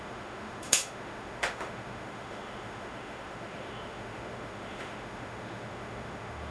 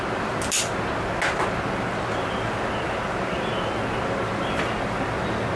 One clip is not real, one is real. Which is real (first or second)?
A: second